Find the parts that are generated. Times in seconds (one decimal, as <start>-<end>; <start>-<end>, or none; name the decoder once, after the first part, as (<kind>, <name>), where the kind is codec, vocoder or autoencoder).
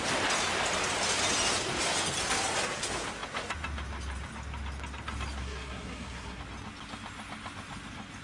5.4-6.4 (codec, SNAC)